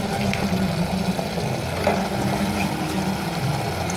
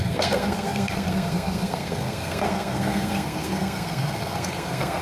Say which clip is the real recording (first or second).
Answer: first